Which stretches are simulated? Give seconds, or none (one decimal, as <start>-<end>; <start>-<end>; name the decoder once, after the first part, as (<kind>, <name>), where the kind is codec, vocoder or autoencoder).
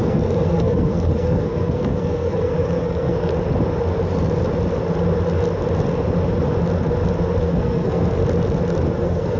0.0-3.3 (codec, SNAC); 7.4-8.2; 9.0-9.4